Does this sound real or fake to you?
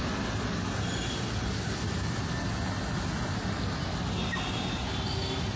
real